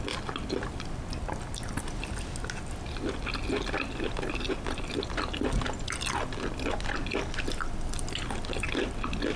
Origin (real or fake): real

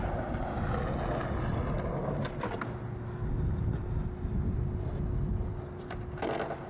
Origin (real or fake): real